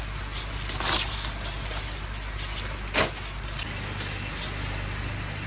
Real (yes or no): yes